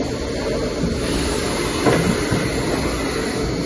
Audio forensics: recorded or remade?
recorded